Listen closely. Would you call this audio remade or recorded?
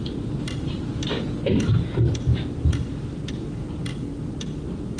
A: recorded